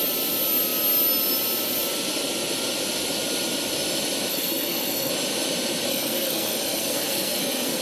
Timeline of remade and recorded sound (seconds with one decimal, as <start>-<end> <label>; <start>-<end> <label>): 0.0-4.3 recorded; 4.3-5.1 remade; 5.1-5.9 recorded; 5.9-7.8 remade